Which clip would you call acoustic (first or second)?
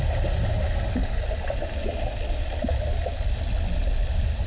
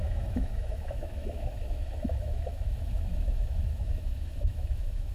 first